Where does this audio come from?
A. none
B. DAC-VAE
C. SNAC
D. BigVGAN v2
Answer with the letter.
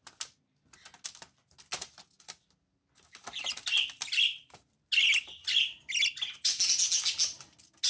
A